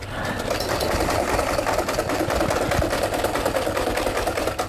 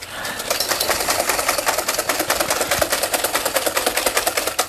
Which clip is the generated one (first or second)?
second